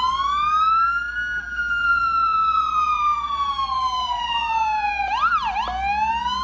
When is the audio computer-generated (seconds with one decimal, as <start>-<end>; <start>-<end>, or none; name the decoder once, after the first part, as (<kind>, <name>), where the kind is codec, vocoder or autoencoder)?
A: 1.8-5.2 (vocoder, Vocos)